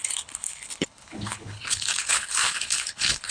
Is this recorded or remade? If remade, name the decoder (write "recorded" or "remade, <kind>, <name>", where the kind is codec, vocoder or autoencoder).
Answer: remade, codec, HILCodec